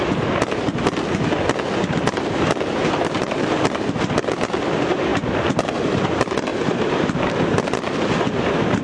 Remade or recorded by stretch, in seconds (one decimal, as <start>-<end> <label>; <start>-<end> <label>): 0.0-2.8 recorded; 2.8-3.6 remade; 3.6-6.5 recorded; 6.5-7.2 remade; 7.2-8.8 recorded